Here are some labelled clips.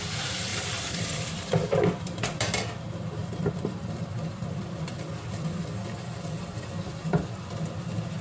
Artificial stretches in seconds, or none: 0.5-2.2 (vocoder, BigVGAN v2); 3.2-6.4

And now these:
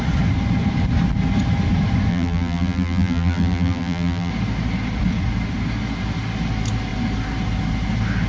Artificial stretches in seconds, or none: 2.1-4.3 (vocoder, BigVGAN v2)

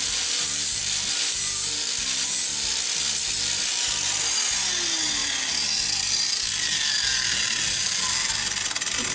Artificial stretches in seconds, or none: 5.2-6.5 (vocoder, BigVGAN v2); 7.1-7.9

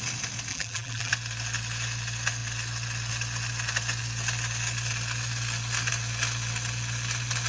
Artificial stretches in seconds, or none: 0.5-1.1 (vocoder, BigVGAN v2)